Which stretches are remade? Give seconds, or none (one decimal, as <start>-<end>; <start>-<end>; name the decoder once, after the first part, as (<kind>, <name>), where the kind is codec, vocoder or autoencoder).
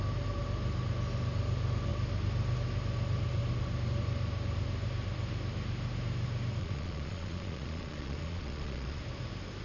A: 6.6-9.0 (vocoder, Vocos)